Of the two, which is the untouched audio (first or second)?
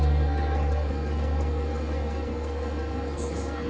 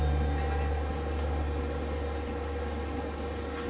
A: second